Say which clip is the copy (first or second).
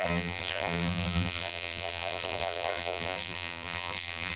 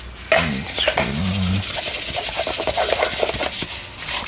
first